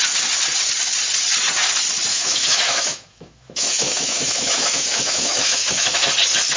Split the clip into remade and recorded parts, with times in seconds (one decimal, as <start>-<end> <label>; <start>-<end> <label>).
0.0-2.1 recorded; 2.1-6.1 remade; 6.1-6.6 recorded